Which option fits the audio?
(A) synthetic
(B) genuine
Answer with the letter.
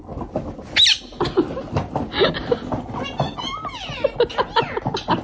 B